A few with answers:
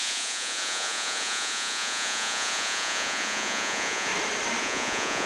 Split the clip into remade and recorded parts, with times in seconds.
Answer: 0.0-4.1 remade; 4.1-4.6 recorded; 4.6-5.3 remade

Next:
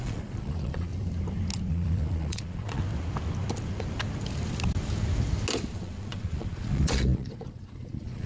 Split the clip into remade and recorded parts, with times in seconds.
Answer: 0.0-0.9 remade; 0.9-1.7 recorded; 1.7-2.8 remade; 2.8-5.7 recorded; 5.7-8.3 remade